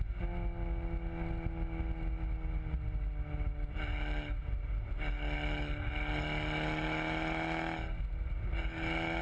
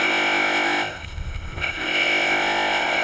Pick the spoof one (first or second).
second